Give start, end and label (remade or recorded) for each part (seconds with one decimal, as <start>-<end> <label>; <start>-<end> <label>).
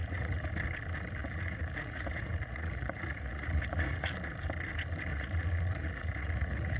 0.0-0.5 remade; 0.5-1.2 recorded; 1.2-4.1 remade; 4.1-5.1 recorded; 5.1-6.8 remade